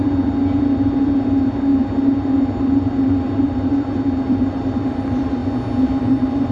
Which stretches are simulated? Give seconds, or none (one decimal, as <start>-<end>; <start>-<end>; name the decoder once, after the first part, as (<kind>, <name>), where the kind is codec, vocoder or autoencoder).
0.0-5.4 (vocoder, BigVGAN v2); 6.0-6.5